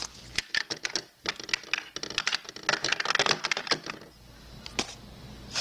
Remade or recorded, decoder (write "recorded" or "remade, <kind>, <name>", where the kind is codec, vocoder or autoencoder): recorded